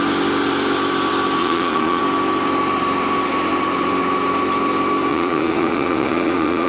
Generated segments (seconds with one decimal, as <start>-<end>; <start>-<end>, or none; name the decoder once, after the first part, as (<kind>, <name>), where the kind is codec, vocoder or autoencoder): 1.4-2.0 (vocoder, Vocos); 5.1-6.7